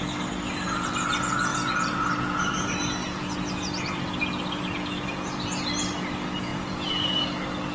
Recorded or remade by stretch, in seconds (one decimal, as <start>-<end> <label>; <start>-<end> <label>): 0.0-6.5 recorded; 6.5-7.3 remade; 7.3-7.7 recorded